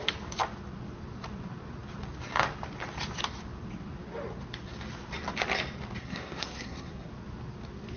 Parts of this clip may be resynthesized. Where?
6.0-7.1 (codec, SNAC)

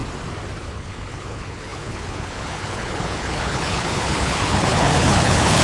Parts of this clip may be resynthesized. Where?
0.6-5.6 (codec, HILCodec)

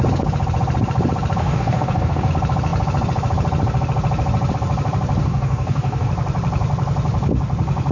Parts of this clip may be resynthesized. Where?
1.4-2.3 (codec, DAC); 5.2-6.1

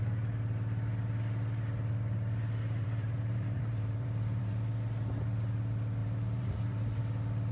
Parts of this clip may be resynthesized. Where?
2.8-4.5 (vocoder, BigVGAN v2); 6.0-7.0

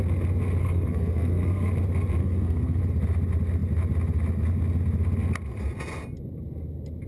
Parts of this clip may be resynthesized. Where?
0.6-1.7 (codec, SNAC); 2.2-2.8

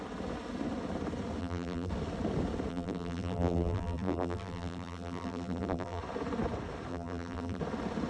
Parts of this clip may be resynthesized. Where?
1.4-1.9 (vocoder, BigVGAN v2); 2.7-6.0; 6.9-7.6

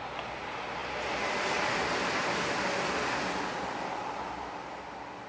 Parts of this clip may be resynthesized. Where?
none

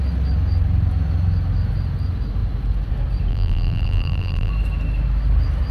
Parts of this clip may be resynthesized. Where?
3.3-4.5 (vocoder, BigVGAN v2)